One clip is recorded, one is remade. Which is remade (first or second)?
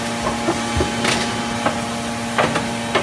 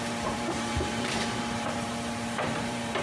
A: second